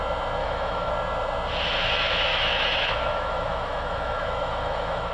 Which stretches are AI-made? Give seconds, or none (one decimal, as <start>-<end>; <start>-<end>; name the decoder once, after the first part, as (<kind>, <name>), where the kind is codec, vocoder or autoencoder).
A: 0.4-0.9 (autoencoder, DAC-VAE); 2.3-5.1